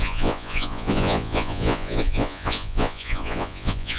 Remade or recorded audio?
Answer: remade